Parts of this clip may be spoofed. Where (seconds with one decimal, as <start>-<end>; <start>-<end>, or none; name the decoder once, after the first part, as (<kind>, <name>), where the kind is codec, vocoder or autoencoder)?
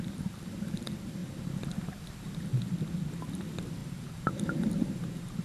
0.0-1.2 (vocoder, BigVGAN v2); 1.8-2.5; 3.1-5.4